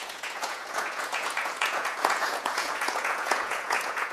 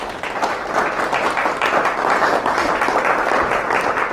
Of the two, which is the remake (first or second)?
first